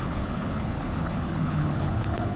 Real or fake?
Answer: fake